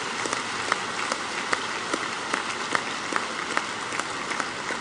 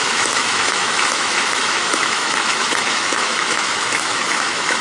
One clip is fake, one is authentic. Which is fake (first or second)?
second